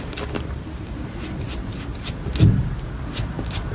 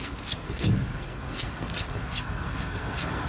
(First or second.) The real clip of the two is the first